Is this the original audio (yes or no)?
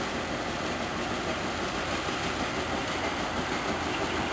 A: yes